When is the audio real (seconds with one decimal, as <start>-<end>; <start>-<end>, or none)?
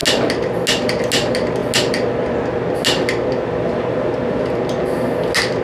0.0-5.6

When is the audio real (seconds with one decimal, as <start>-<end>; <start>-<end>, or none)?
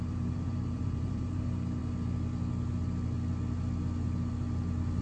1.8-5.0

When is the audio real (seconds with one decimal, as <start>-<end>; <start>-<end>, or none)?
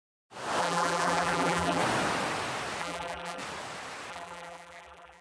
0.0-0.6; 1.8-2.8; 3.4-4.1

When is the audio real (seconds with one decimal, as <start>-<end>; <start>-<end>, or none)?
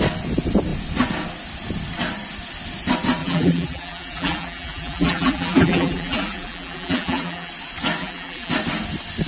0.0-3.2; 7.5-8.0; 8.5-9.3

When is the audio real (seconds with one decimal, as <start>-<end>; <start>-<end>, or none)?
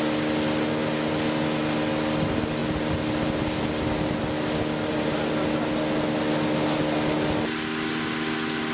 0.0-8.7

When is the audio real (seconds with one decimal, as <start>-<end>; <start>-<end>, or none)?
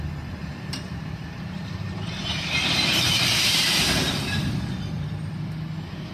0.0-0.4; 4.1-6.1